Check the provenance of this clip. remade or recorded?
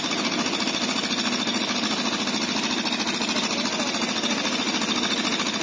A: recorded